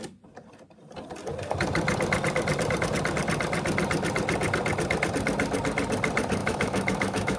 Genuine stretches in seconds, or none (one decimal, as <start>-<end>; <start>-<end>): 0.0-6.4